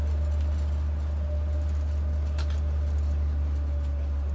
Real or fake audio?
real